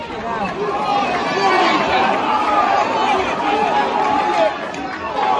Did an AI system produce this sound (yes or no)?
no